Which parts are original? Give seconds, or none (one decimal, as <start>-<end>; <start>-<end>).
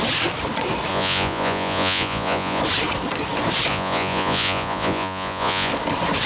0.0-0.9; 2.6-3.7; 5.7-6.3